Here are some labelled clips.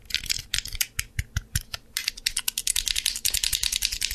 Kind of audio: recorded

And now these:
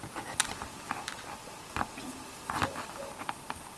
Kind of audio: recorded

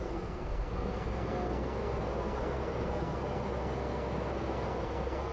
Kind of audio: remade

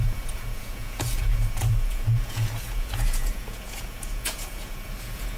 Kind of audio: remade